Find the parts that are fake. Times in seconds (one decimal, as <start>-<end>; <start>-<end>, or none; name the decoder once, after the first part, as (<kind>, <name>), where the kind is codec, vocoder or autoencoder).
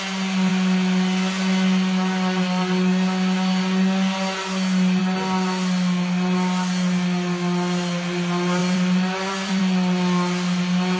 8.6-9.6 (vocoder, BigVGAN v2)